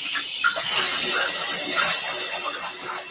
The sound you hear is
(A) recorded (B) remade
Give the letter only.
A